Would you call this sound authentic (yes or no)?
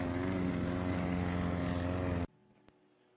yes